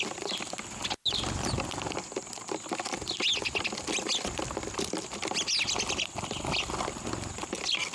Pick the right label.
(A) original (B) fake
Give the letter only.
A